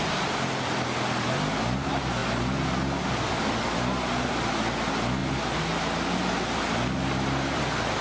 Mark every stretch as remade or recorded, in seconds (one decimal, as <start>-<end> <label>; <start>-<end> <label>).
0.0-8.0 recorded